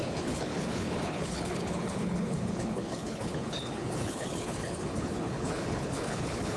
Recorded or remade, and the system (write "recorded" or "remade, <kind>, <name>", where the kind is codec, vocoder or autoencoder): remade, codec, HILCodec